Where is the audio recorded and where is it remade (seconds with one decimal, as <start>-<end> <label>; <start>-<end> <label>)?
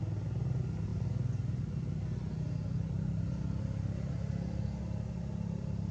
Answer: 0.0-5.9 recorded